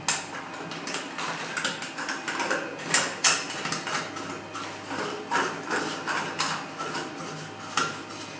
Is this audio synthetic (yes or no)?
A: no